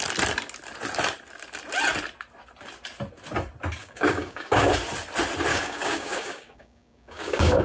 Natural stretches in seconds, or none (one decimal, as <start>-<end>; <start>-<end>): 0.0-3.8; 4.7-5.5